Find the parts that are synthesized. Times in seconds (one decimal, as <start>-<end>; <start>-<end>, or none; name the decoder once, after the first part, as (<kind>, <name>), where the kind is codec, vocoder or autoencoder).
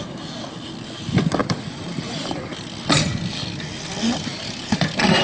1.4-2.5 (vocoder, BigVGAN v2); 4.3-5.2